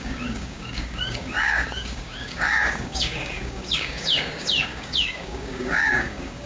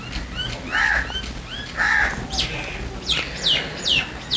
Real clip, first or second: second